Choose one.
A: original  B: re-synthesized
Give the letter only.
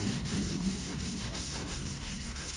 B